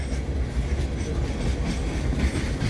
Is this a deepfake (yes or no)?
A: no